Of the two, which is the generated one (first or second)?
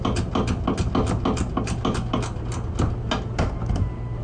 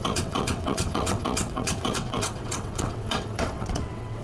second